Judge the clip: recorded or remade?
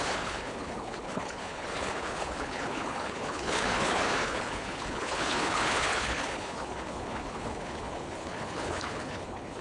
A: remade